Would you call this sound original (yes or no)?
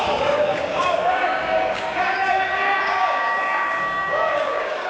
no